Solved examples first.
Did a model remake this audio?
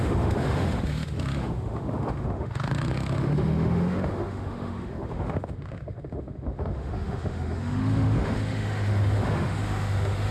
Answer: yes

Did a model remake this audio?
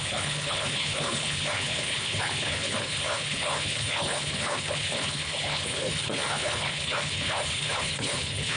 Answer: yes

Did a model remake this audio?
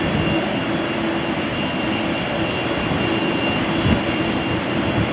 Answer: no